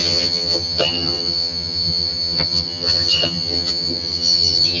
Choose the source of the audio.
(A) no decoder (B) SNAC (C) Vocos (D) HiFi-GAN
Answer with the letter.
D